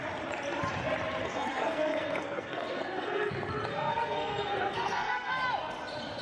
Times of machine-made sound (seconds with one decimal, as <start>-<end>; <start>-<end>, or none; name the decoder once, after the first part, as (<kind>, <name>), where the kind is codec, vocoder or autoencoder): 1.2-3.3 (codec, SNAC); 3.7-5.4